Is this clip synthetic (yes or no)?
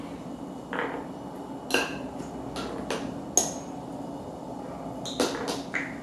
no